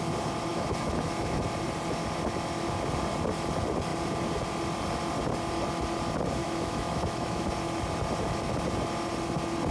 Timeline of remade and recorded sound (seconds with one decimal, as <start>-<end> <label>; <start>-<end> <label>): 0.0-0.5 recorded; 0.5-1.4 remade; 1.4-6.4 recorded; 6.4-7.5 remade; 7.5-9.7 recorded